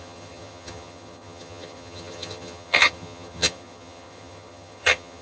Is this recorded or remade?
remade